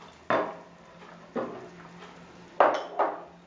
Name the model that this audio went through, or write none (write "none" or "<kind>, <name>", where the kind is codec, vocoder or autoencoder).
none